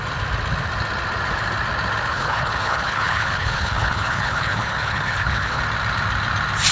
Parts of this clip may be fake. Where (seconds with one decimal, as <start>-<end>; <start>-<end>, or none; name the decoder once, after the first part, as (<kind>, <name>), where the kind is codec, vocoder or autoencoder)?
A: 2.1-5.6 (codec, HILCodec)